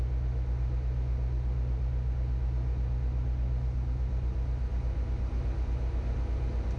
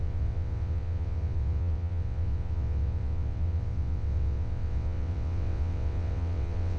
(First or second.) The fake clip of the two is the second